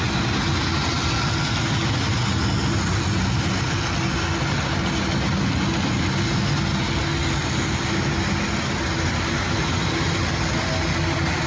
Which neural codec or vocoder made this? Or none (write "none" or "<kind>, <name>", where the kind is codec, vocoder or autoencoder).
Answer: none